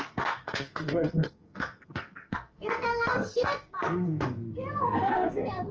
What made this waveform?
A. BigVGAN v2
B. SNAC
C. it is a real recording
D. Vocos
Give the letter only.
B